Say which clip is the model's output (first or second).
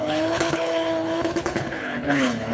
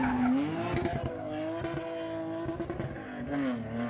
first